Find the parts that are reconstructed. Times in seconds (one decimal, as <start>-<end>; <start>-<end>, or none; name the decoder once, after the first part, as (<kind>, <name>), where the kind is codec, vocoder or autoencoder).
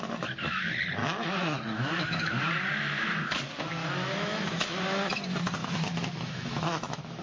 1.0-2.3 (autoencoder, DAC-VAE); 3.8-4.8; 5.6-7.2